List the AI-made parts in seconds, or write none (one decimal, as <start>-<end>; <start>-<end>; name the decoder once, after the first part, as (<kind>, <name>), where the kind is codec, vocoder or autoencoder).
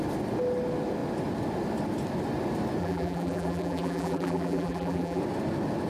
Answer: 2.8-5.2 (vocoder, BigVGAN v2)